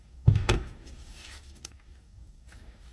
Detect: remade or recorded remade